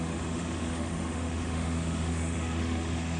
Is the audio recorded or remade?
remade